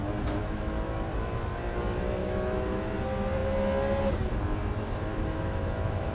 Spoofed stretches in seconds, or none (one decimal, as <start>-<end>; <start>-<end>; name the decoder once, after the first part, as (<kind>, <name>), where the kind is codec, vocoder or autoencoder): 0.4-1.1 (autoencoder, DAC-VAE); 2.2-2.9; 5.1-6.1